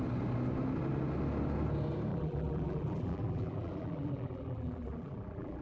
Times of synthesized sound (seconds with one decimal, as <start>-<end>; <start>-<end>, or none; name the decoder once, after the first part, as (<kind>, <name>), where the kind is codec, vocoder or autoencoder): 2.1-5.6 (vocoder, BigVGAN v2)